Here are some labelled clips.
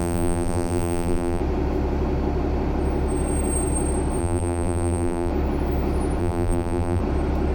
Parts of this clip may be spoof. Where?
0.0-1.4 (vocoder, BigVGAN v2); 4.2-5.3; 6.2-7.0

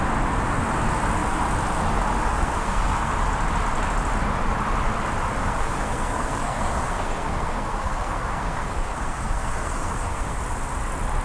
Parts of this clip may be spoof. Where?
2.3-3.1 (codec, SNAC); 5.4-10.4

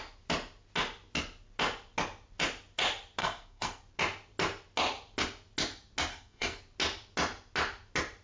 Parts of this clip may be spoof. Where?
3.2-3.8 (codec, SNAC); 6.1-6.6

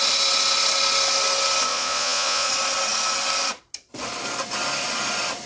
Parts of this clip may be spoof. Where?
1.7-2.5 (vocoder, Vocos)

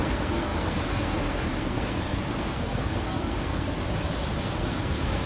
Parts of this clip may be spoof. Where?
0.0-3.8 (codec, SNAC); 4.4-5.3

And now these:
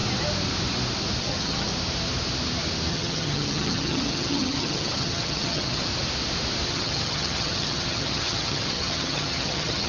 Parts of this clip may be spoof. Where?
1.2-1.7 (vocoder, HiFi-GAN); 2.9-5.9; 6.7-9.9

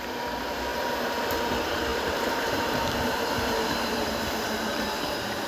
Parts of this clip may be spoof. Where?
1.9-5.5 (vocoder, BigVGAN v2)

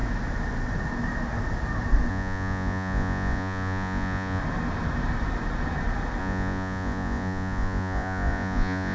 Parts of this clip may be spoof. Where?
2.1-4.4 (vocoder, Vocos); 6.2-8.9